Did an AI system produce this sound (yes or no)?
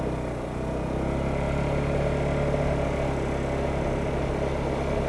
no